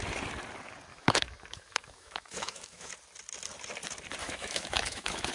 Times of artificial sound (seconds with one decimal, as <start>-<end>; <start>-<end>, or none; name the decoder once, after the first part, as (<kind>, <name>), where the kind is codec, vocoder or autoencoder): 0.9-2.9 (autoencoder, DAC-VAE); 4.2-5.3